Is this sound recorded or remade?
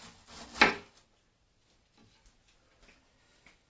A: recorded